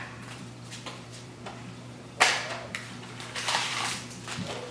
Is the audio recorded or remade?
remade